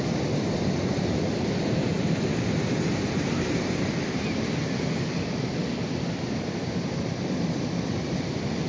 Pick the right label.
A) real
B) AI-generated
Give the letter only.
A